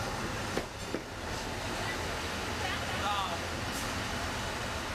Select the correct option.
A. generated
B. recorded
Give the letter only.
B